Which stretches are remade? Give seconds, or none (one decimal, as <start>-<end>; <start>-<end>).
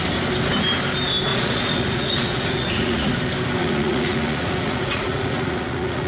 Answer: 1.3-3.1; 3.6-6.1